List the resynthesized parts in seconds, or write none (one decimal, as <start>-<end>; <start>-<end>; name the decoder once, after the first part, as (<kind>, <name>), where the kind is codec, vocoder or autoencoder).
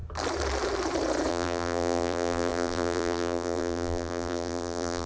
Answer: 1.3-5.1 (vocoder, BigVGAN v2)